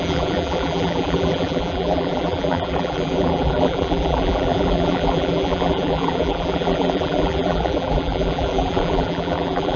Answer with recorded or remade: remade